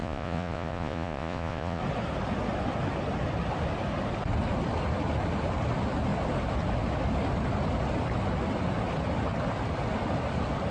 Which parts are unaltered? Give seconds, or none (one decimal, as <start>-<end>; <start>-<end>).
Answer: 1.8-10.7

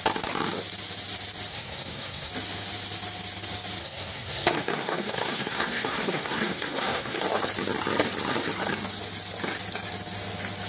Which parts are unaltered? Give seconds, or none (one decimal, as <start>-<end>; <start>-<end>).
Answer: 0.0-1.5; 2.3-3.8; 7.2-10.7

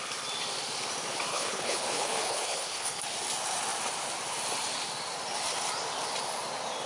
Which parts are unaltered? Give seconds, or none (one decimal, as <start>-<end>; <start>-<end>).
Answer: 0.0-1.3; 3.0-6.9

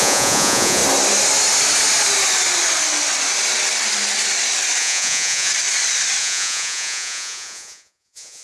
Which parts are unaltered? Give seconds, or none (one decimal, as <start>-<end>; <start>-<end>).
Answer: 0.8-4.8; 5.5-6.2